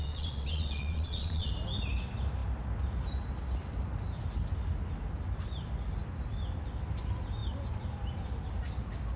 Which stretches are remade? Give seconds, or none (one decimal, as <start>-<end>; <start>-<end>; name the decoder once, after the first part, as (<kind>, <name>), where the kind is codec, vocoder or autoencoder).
0.0-1.5 (vocoder, WaveNeXt)